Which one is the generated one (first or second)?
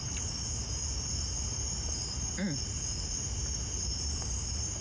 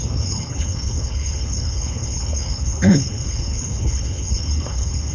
second